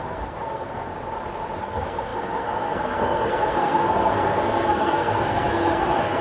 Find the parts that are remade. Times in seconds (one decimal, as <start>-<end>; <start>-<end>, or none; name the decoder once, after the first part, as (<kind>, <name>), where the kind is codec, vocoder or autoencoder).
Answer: 0.0-0.9 (codec, SNAC); 1.6-6.2